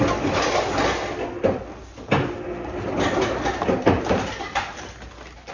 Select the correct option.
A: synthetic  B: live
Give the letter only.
B